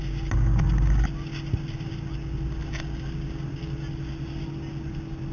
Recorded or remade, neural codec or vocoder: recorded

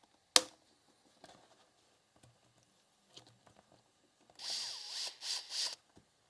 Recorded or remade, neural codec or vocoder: recorded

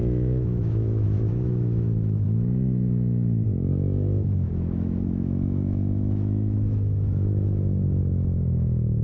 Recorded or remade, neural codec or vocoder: remade, autoencoder, DAC-VAE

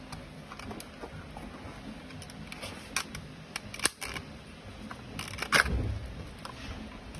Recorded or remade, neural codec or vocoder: recorded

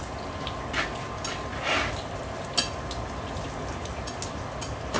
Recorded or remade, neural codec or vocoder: recorded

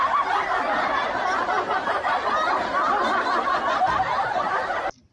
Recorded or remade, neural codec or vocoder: recorded